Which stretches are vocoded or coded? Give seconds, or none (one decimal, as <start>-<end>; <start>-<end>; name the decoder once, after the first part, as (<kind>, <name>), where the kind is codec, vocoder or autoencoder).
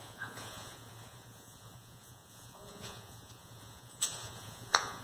0.0-5.0 (vocoder, Vocos)